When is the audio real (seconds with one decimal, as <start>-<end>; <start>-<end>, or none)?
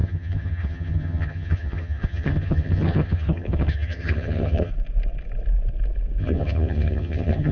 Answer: 4.7-6.2